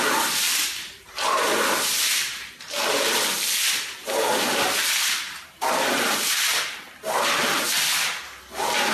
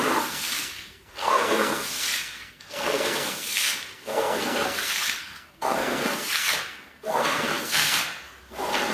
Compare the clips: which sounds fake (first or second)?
second